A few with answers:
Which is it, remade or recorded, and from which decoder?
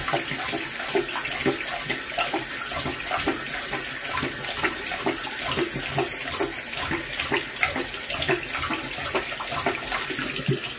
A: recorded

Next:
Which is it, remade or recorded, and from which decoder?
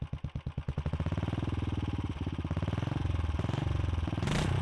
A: recorded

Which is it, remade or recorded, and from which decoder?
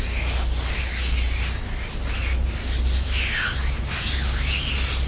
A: recorded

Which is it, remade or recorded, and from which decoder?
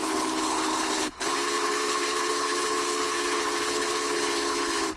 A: remade, codec, HILCodec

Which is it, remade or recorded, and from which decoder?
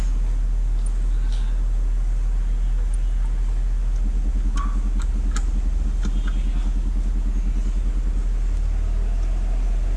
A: recorded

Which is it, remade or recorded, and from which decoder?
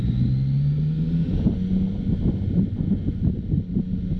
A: recorded